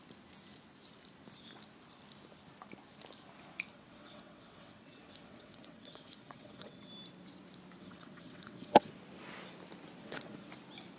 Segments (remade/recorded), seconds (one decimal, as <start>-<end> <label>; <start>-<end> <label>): 0.0-3.7 recorded; 3.7-6.9 remade; 6.9-7.8 recorded; 7.8-9.0 remade; 9.0-10.0 recorded; 10.0-10.5 remade; 10.5-11.0 recorded